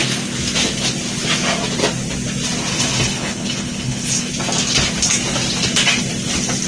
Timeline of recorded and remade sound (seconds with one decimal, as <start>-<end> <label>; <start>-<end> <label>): 0.0-2.7 recorded; 2.7-4.3 remade; 4.3-6.7 recorded